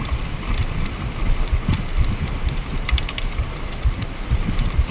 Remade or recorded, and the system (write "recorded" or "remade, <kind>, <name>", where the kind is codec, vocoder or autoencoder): recorded